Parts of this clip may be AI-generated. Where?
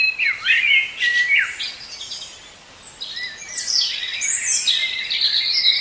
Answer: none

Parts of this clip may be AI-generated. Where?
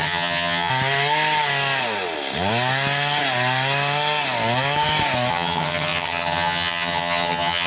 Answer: 0.0-0.7 (vocoder, HiFi-GAN); 5.3-7.7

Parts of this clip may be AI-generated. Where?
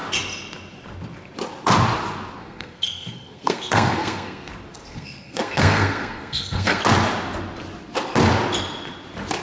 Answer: 2.4-4.5 (codec, SNAC); 4.9-6.8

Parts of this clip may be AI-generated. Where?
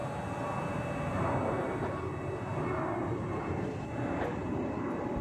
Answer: 3.1-5.2 (vocoder, BigVGAN v2)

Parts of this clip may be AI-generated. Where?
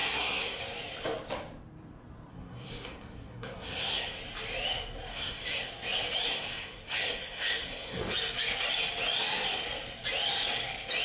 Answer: 0.0-0.6 (codec, SNAC); 2.3-4.2; 5.1-5.7; 6.3-8.0